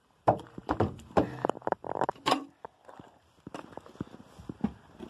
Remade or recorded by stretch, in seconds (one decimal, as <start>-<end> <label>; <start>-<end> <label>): 0.0-2.4 remade; 2.4-5.1 recorded